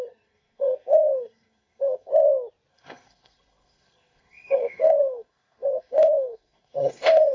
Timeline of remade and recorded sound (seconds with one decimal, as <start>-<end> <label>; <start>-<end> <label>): 0.0-2.1 remade; 2.1-2.7 recorded; 2.7-7.3 remade